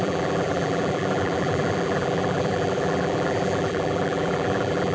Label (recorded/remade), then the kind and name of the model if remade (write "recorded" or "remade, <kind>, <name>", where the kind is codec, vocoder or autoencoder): remade, vocoder, BigVGAN v2